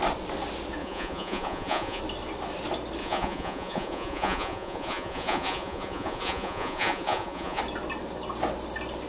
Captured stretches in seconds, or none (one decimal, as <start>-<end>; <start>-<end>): 0.0-0.8; 2.0-3.0; 7.6-9.1